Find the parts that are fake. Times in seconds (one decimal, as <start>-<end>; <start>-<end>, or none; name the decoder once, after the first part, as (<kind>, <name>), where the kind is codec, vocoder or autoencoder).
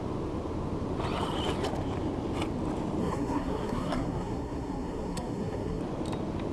3.0-5.8 (codec, SNAC)